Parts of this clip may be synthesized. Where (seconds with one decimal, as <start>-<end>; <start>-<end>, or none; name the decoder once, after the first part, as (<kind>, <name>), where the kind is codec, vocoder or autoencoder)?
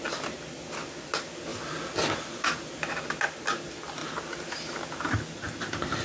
none